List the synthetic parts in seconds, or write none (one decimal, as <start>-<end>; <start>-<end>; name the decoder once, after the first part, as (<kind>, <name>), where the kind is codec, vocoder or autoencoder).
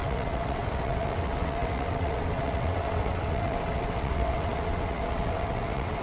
0.0-6.0 (vocoder, WaveNeXt)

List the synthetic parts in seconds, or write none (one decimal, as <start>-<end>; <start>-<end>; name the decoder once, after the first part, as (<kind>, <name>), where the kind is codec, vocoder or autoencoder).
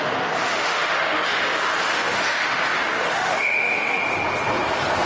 0.5-2.6 (autoencoder, DAC-VAE); 3.0-4.0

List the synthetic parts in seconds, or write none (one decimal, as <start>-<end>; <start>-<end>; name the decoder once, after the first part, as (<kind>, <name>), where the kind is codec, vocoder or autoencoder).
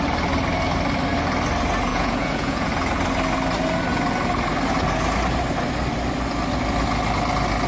1.9-2.7 (vocoder, Vocos)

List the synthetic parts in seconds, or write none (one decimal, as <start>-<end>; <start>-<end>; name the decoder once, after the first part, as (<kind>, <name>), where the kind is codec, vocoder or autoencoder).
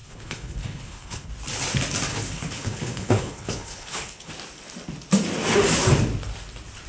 0.0-1.3 (codec, HILCodec); 2.1-4.3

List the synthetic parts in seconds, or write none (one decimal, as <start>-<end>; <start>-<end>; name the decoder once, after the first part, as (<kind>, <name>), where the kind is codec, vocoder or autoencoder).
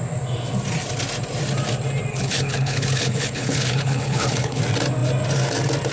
2.1-4.6 (codec, HILCodec)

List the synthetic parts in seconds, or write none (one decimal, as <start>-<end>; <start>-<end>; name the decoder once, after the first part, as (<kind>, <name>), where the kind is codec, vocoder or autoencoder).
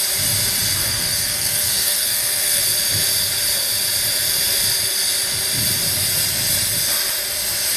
0.8-2.6 (codec, SNAC)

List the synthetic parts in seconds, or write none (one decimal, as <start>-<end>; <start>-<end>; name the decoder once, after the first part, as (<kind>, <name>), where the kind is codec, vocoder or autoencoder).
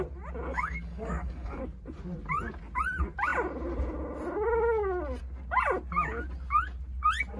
0.5-1.6 (codec, DAC)